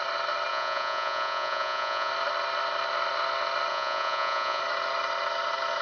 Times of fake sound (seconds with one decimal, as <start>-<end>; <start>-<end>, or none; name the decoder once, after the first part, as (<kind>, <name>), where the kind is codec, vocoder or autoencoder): 0.5-2.1 (vocoder, Vocos); 3.7-4.6